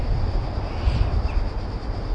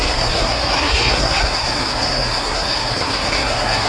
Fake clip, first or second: second